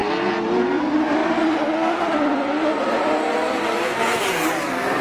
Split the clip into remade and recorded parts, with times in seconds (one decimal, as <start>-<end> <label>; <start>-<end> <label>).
0.0-5.0 recorded